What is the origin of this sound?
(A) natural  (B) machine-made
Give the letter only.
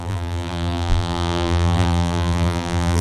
B